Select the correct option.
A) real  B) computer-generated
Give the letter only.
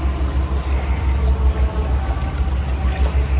A